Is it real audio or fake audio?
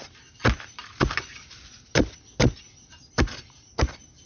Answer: real